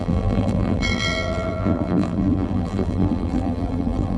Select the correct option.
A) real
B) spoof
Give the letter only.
B